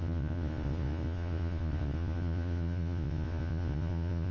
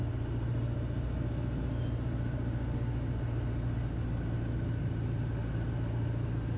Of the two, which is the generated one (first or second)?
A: first